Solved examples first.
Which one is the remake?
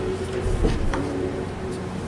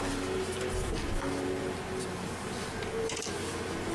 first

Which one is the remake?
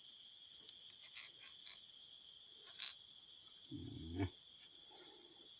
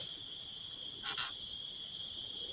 second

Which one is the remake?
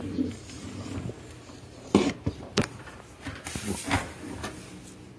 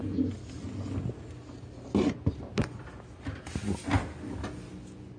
first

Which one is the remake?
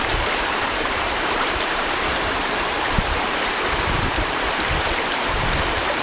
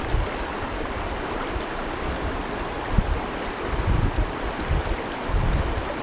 first